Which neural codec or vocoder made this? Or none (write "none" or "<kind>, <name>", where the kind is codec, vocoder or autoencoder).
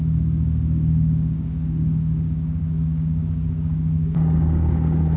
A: codec, DAC